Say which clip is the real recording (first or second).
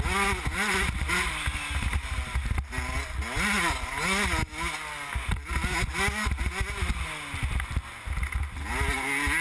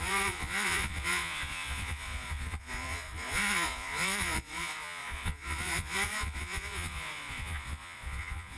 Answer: first